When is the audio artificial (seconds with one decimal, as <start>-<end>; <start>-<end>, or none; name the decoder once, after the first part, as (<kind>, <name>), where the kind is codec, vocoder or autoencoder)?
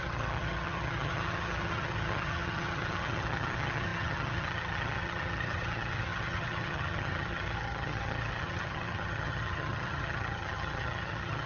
0.0-11.5 (vocoder, HiFi-GAN)